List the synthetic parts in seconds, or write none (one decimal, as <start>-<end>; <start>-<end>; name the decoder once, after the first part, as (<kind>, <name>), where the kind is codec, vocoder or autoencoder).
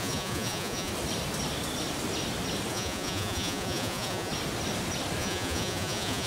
0.0-0.9 (vocoder, Vocos); 2.7-4.3; 5.2-6.3